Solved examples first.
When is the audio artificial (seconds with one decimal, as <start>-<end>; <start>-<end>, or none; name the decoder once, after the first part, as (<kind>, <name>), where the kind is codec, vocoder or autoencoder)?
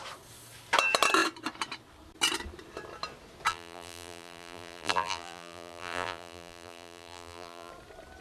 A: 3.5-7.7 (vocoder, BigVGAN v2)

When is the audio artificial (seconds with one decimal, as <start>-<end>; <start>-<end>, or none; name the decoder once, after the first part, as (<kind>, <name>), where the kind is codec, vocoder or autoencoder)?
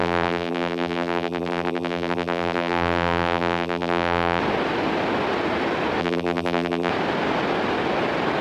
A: 0.0-4.4 (vocoder, BigVGAN v2); 6.0-6.9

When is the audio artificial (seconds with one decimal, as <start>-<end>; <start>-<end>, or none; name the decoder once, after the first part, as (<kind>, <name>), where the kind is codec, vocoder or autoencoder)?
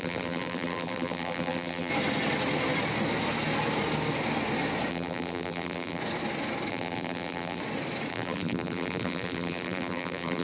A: 0.0-1.9 (vocoder, BigVGAN v2); 4.9-6.0; 6.7-7.6; 8.1-10.4